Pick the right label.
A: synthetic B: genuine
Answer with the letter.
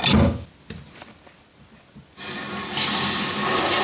B